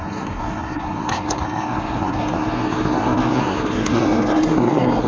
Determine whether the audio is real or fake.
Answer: fake